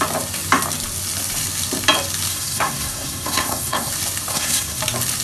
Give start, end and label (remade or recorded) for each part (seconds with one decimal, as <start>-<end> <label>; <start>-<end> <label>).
0.0-2.3 recorded; 2.3-3.9 remade; 3.9-4.3 recorded; 4.3-4.8 remade; 4.8-5.2 recorded